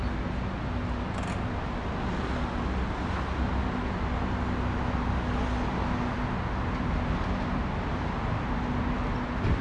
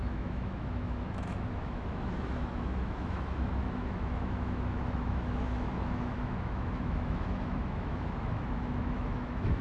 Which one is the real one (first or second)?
first